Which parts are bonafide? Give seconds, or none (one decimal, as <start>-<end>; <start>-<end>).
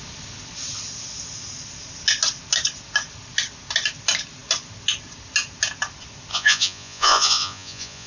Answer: 0.0-6.3